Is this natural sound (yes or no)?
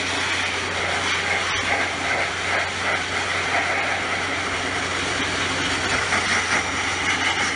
yes